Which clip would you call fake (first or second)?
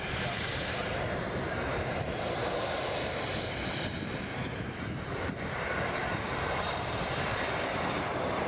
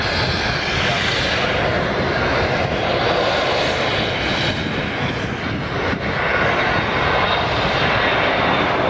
first